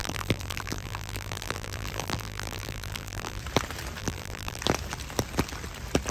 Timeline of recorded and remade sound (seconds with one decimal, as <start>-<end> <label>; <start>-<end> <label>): 0.0-3.4 remade; 3.4-4.0 recorded; 4.0-4.6 remade; 4.6-6.1 recorded